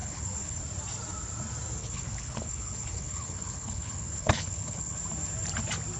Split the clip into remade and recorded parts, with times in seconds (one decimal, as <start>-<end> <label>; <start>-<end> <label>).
0.0-0.6 remade; 0.6-1.8 recorded; 1.8-5.0 remade; 5.0-6.0 recorded